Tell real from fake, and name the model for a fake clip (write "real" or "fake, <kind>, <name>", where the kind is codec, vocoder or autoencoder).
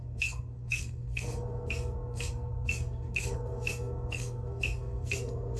fake, codec, SNAC